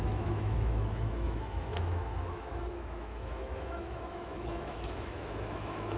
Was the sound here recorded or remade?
remade